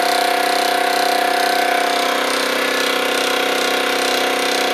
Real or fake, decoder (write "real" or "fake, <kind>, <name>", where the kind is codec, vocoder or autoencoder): real